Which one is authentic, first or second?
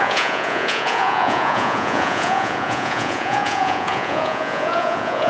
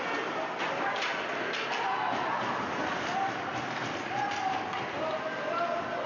second